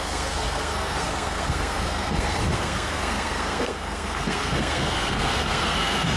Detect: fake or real fake